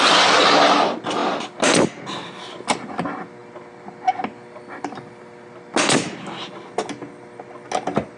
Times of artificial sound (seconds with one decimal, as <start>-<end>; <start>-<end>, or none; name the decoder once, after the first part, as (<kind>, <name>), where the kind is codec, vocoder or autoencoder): none